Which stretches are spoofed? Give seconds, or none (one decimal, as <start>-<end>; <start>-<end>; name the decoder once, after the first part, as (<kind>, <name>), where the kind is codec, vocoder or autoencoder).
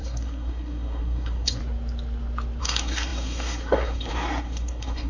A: 0.0-1.6 (codec, SNAC); 2.6-5.1